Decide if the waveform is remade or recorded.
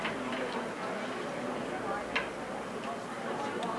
recorded